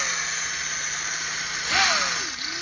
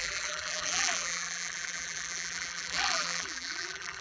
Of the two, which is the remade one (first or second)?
second